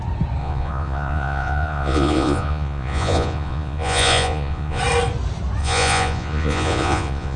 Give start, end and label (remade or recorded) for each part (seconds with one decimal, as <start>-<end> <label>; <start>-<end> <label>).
0.0-0.4 recorded; 0.4-4.8 remade; 4.8-5.6 recorded; 5.6-7.4 remade